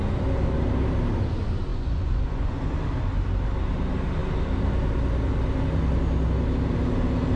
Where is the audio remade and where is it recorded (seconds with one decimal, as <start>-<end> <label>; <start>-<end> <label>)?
0.0-1.7 recorded; 1.7-2.7 remade; 2.7-7.4 recorded